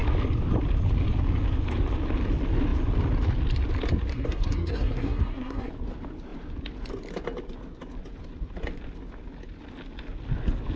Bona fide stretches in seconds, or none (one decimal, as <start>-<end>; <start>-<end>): 0.0-4.1; 5.7-10.8